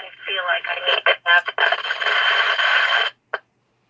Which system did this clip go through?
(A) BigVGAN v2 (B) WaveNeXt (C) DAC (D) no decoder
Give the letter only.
D